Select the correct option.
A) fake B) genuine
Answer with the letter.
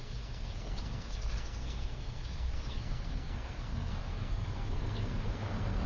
A